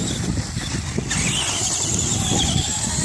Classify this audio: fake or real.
real